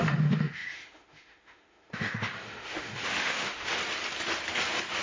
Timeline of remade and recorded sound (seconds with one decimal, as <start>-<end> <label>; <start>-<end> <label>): 0.0-3.8 remade; 3.8-5.0 recorded